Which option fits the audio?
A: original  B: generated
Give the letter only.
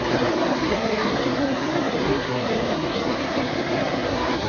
B